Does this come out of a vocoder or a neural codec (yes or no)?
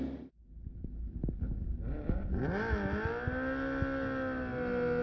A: no